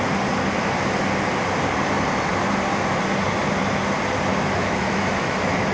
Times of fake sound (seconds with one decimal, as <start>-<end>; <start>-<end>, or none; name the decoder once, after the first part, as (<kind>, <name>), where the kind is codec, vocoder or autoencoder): 4.3-5.7 (autoencoder, DAC-VAE)

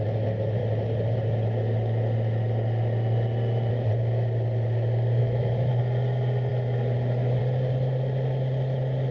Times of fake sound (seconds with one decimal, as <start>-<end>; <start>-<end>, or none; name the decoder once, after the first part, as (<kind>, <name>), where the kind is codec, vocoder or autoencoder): 5.2-5.8 (autoencoder, DAC-VAE); 6.5-7.4

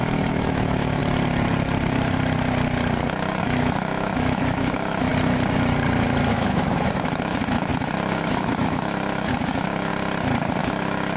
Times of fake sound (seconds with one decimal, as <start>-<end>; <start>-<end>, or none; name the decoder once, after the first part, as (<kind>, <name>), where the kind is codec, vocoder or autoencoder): 0.0-1.0 (autoencoder, DAC-VAE); 3.4-5.1; 6.3-9.9; 10.6-11.2

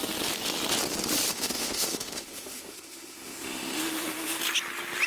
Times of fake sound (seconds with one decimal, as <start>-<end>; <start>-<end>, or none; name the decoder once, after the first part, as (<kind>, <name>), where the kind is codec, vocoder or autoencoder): 1.3-4.4 (autoencoder, DAC-VAE)

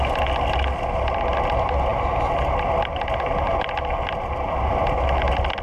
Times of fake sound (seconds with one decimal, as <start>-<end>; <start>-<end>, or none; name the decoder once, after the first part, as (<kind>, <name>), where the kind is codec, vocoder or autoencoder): none